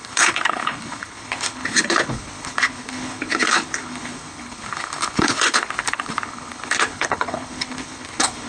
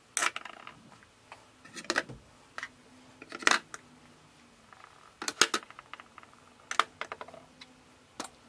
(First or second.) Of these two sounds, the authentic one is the second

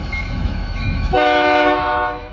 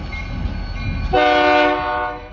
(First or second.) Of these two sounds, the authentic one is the second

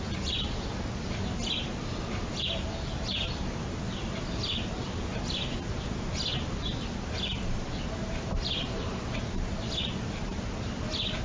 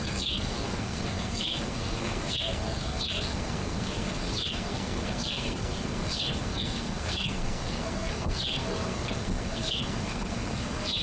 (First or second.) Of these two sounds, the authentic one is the first